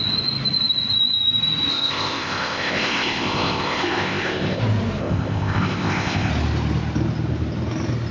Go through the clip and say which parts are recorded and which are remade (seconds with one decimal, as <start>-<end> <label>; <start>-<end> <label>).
0.0-1.7 recorded; 1.7-4.6 remade; 4.6-5.0 recorded; 5.0-6.3 remade; 6.3-8.1 recorded